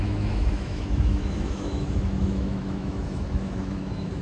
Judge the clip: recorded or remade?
remade